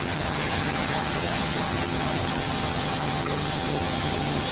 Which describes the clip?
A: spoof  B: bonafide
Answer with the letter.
A